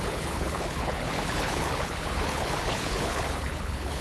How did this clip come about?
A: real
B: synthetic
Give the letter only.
B